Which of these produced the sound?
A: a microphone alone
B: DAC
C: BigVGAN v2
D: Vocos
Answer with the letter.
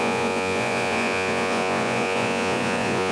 D